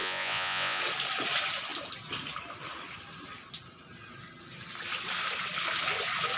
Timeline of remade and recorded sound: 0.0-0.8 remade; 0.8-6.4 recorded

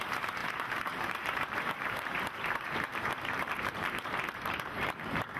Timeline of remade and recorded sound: 0.0-5.4 remade

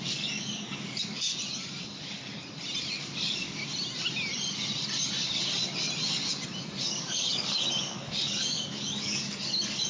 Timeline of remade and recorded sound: 0.0-1.3 remade; 1.3-3.0 recorded; 3.0-3.6 remade; 3.6-6.8 recorded; 6.8-9.9 remade